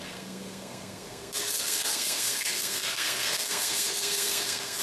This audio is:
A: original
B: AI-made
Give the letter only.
B